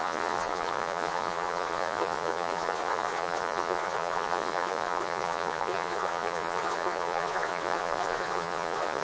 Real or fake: fake